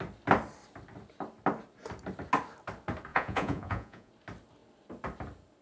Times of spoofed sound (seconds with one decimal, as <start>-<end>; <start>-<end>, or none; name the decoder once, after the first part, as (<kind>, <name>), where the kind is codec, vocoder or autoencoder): 3.1-4.1 (vocoder, Vocos)